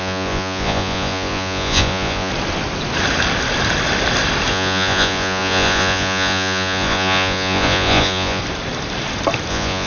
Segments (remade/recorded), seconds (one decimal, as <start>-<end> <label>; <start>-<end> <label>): 0.0-2.3 remade; 2.3-4.5 recorded; 4.5-8.4 remade; 8.4-9.5 recorded; 9.5-9.9 remade